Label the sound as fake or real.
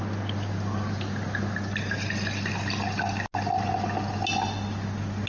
real